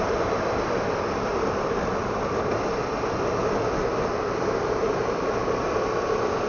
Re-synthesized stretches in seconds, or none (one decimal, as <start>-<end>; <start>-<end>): none